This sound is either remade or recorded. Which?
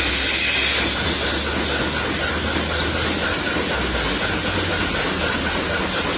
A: recorded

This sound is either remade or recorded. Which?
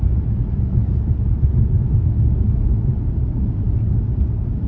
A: recorded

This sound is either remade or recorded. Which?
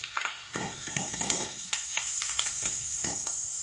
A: remade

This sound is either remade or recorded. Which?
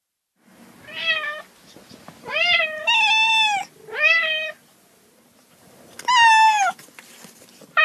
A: recorded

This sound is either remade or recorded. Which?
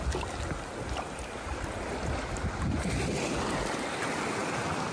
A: recorded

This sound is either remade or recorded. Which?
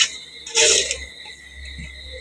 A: recorded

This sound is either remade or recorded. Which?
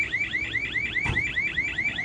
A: recorded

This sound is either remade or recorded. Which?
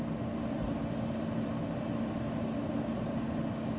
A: recorded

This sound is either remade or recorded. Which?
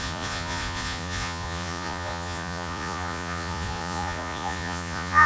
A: remade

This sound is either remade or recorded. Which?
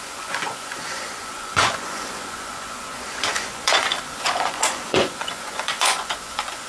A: remade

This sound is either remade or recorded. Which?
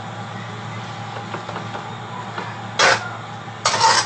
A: recorded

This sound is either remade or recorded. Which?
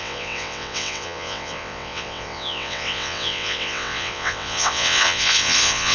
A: remade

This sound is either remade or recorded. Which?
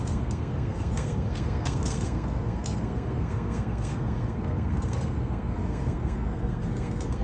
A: remade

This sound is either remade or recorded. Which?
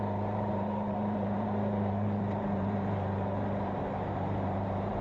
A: remade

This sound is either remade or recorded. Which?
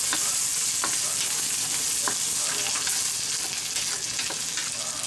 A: recorded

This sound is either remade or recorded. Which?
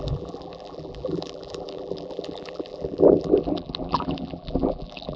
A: remade